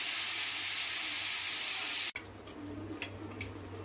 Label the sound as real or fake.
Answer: real